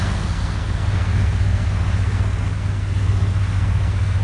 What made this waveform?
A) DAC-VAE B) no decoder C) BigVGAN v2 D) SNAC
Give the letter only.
D